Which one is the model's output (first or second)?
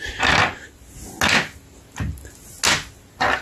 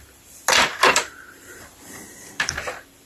second